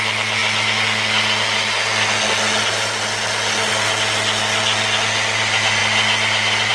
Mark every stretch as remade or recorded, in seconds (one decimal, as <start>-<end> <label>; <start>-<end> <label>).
0.0-6.7 recorded